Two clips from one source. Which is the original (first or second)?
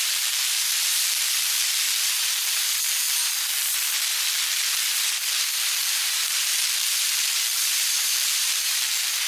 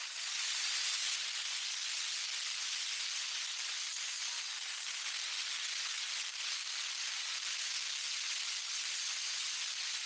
second